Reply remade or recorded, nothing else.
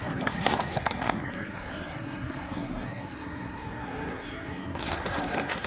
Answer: remade